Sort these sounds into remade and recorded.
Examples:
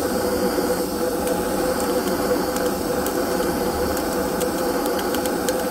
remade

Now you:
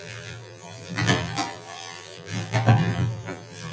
remade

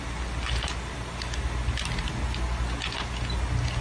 recorded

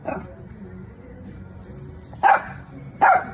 recorded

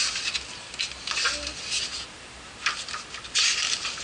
recorded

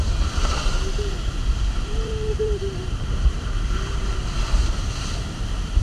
remade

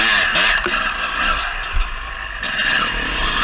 recorded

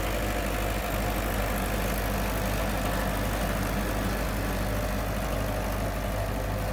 recorded